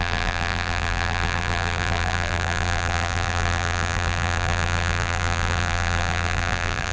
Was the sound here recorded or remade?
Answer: remade